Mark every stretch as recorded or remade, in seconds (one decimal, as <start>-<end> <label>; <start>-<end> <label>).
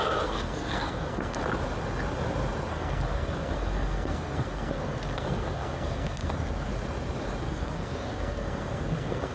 0.0-1.4 remade; 1.4-2.7 recorded; 2.7-6.7 remade; 6.7-7.4 recorded; 7.4-9.3 remade